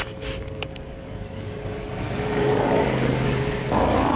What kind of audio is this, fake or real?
fake